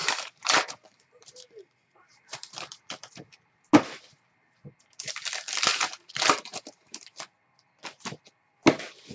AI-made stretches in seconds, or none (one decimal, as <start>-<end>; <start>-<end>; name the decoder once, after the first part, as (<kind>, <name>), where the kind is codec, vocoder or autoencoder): 0.0-3.1 (vocoder, BigVGAN v2); 5.7-7.2